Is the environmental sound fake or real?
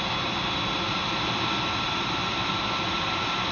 real